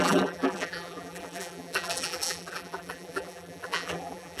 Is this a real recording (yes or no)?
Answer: no